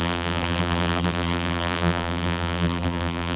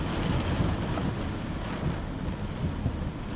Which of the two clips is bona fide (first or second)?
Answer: second